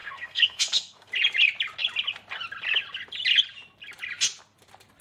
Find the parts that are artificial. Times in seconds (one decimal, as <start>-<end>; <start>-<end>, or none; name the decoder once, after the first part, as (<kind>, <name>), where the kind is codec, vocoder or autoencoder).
0.0-1.1 (codec, SNAC)